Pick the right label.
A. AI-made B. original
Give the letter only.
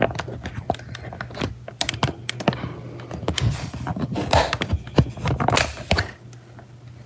B